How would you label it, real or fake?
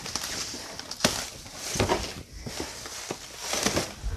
real